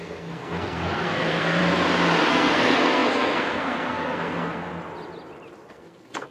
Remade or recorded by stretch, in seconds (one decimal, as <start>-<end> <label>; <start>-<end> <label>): 0.0-1.6 remade; 1.6-2.3 recorded; 2.3-4.7 remade; 4.7-5.7 recorded; 5.7-6.3 remade